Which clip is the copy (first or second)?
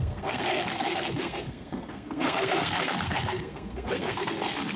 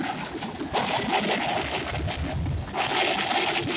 first